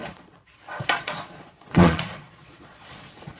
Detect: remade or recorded remade